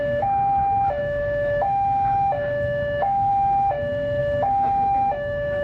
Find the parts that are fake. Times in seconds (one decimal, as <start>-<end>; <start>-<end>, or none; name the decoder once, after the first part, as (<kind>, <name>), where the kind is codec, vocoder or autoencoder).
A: 0.0-5.6 (autoencoder, DAC-VAE)